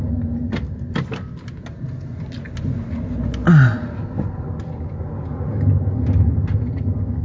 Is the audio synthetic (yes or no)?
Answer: no